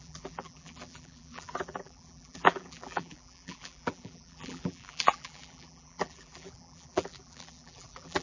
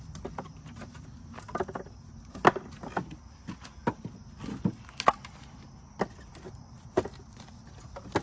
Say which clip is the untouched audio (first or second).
second